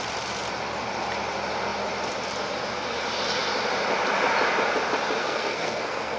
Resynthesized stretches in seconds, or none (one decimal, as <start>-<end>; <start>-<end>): 5.2-6.2